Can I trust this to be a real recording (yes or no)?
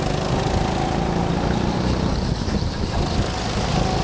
yes